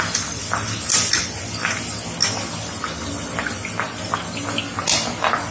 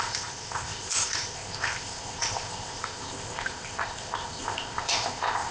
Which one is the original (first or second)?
first